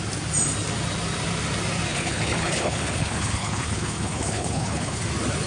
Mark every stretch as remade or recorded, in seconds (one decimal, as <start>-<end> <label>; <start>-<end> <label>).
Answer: 0.0-1.9 recorded; 1.9-5.0 remade; 5.0-5.5 recorded